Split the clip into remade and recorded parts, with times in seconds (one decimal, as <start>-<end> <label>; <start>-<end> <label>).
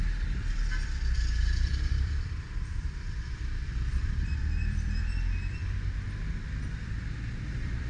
0.0-7.9 remade